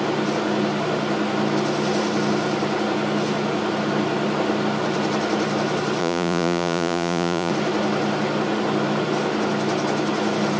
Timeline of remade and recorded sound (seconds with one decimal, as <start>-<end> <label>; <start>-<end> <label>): 0.0-6.0 recorded; 6.0-7.5 remade; 7.5-10.6 recorded